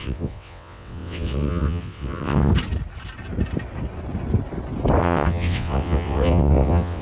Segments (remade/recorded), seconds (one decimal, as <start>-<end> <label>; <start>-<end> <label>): 0.0-2.5 remade; 2.5-5.0 recorded; 5.0-7.0 remade